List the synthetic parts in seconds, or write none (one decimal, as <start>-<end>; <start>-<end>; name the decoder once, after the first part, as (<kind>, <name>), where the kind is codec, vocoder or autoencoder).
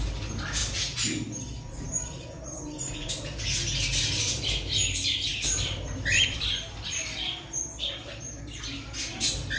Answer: 0.6-3.1 (vocoder, BigVGAN v2); 5.3-8.4